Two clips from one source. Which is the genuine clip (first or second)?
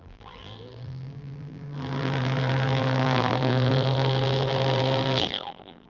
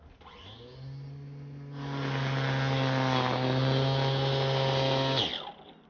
second